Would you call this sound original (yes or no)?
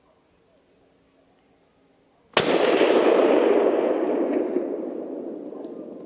yes